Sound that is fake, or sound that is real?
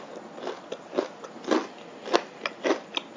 real